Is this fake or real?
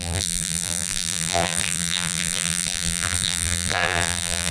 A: fake